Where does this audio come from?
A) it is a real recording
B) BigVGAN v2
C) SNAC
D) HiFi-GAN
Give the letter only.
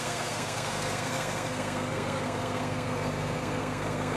C